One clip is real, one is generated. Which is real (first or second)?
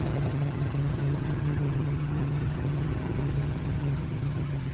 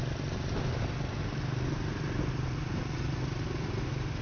second